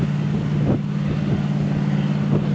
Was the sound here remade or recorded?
recorded